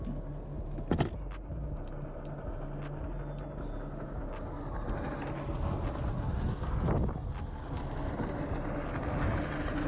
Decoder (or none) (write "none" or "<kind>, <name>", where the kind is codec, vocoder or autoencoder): none